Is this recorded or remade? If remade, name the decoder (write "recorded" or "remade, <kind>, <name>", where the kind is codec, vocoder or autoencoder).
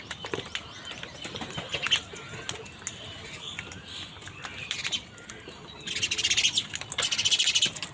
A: recorded